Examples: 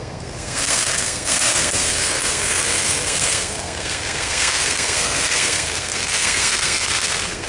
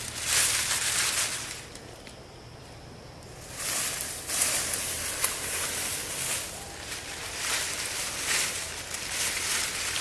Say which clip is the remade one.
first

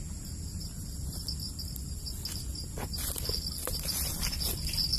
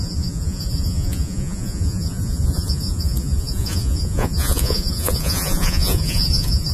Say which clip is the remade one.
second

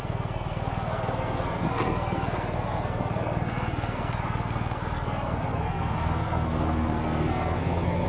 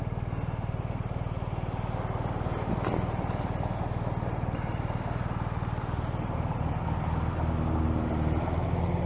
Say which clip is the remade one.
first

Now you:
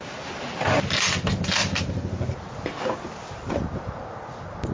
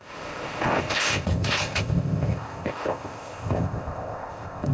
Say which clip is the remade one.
second